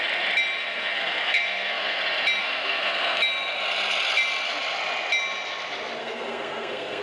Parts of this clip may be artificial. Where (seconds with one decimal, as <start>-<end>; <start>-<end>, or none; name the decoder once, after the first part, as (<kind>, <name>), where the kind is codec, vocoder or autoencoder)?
0.6-2.0 (codec, SNAC); 2.4-3.2; 6.0-7.0